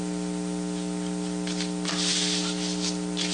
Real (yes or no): yes